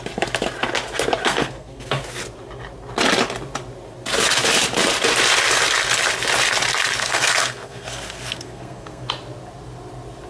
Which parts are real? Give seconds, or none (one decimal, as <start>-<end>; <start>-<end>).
0.0-1.2; 2.2-7.0; 9.1-10.3